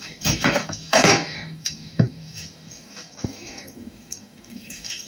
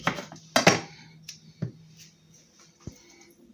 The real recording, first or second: second